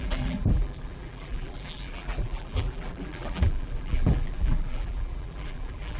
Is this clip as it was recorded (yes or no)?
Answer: no